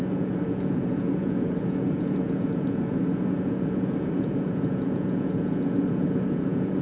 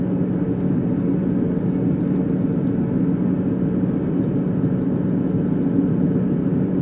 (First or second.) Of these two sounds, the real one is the second